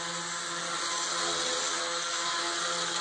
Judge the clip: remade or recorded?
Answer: recorded